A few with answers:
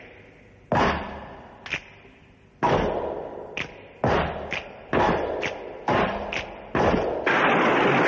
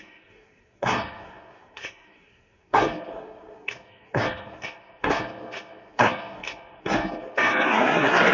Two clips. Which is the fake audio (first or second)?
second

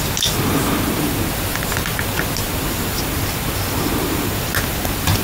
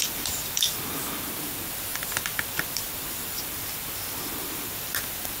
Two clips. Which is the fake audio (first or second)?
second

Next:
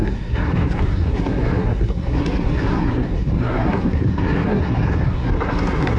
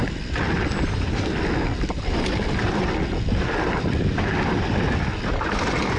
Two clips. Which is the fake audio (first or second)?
first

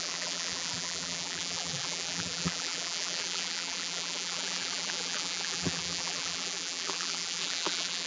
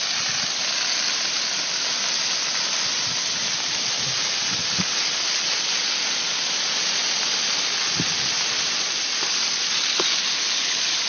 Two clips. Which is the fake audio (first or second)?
first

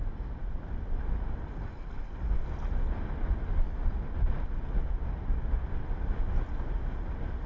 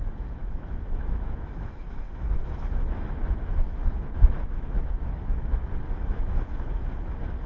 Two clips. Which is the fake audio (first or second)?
second